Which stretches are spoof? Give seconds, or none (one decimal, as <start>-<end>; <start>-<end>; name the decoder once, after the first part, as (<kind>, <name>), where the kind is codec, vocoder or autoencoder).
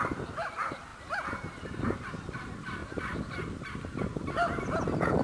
none